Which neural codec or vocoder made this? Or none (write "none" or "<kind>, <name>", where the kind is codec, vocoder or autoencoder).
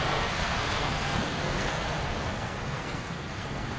codec, SNAC